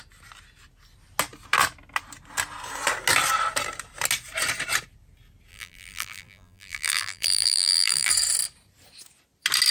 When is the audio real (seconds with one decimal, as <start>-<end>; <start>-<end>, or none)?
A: 0.0-5.5; 8.1-9.7

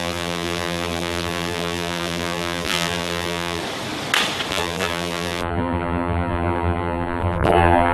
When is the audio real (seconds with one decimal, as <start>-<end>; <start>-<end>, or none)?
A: 3.6-4.5

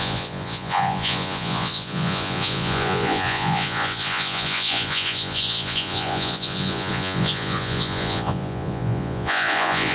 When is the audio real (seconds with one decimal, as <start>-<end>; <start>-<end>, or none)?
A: none

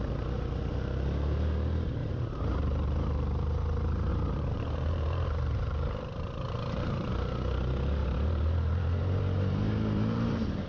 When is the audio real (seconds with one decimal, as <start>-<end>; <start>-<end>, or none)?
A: 0.0-2.0; 2.6-4.1; 7.1-8.0

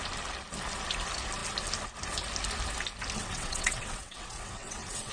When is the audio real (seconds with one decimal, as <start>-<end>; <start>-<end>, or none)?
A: 0.0-3.2